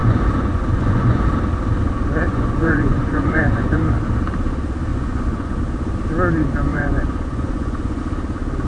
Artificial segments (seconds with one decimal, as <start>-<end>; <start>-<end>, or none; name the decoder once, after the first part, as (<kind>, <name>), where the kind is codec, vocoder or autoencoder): 0.0-1.2 (vocoder, Vocos); 2.3-3.8; 4.9-5.6; 6.7-8.0